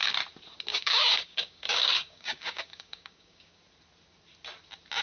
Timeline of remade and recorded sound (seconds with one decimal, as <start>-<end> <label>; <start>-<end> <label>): 0.0-0.7 recorded; 0.7-3.6 remade; 3.6-5.0 recorded